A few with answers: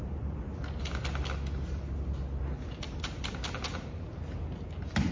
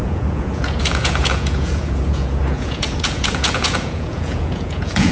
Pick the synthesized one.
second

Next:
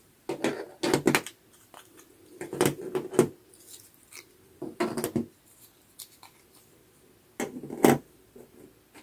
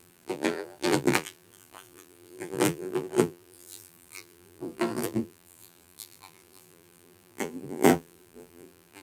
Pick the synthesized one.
second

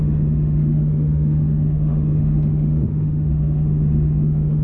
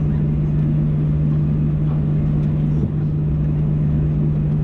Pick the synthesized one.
first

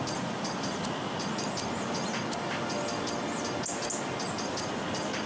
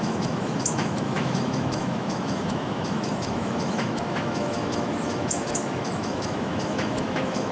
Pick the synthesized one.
second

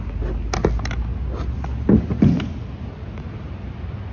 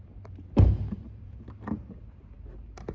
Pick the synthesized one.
second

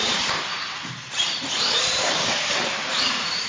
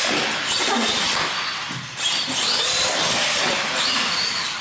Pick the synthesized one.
first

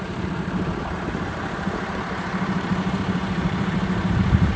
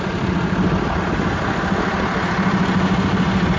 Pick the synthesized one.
first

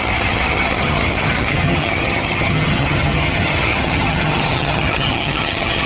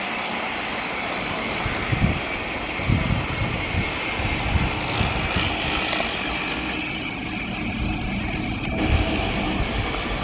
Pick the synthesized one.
first